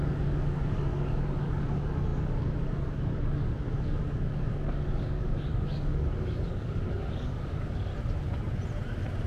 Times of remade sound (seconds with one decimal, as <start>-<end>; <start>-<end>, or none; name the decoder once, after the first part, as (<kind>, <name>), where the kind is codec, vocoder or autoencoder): 0.0-7.9 (codec, DAC)